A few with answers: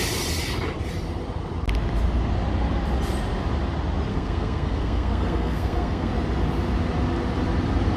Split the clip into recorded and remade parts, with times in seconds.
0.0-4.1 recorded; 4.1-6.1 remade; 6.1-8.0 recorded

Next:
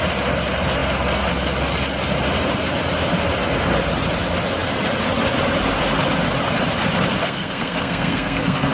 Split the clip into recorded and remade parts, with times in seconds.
0.0-7.2 recorded; 7.2-8.7 remade

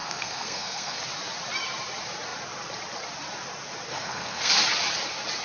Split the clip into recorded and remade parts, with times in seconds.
0.0-1.0 remade; 1.0-3.9 recorded; 3.9-4.5 remade; 4.5-5.4 recorded

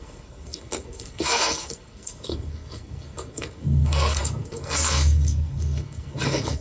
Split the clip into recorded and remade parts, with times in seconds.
0.0-6.6 remade

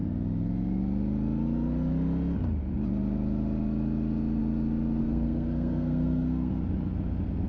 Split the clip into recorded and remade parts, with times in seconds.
0.0-5.0 recorded; 5.0-6.5 remade; 6.5-7.5 recorded

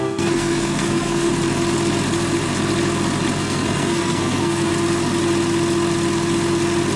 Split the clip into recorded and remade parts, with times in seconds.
0.0-1.3 remade; 1.3-3.4 recorded; 3.4-4.7 remade; 4.7-7.0 recorded

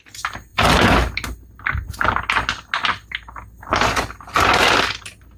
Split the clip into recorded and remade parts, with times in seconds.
0.0-5.4 recorded